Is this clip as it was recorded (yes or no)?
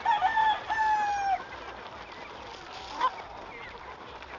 yes